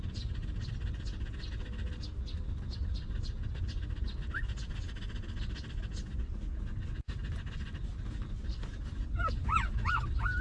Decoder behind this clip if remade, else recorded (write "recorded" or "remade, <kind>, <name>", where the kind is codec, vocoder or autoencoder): recorded